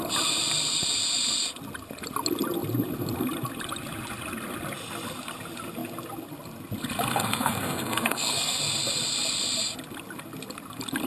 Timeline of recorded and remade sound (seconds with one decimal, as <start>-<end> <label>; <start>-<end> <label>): 0.0-7.1 recorded; 7.1-8.6 remade; 8.6-11.1 recorded